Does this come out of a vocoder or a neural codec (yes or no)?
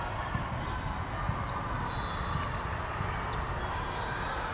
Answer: no